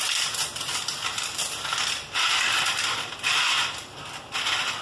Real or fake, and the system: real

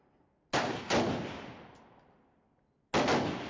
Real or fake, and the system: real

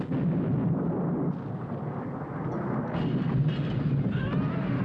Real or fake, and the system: real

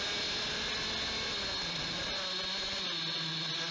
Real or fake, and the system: real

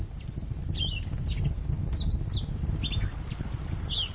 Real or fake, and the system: real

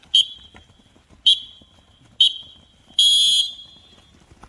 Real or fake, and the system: real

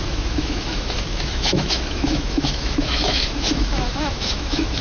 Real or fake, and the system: fake, autoencoder, DAC-VAE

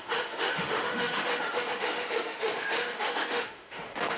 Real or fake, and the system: fake, autoencoder, DAC-VAE